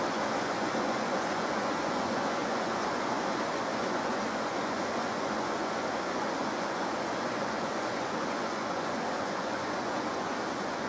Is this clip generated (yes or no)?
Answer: yes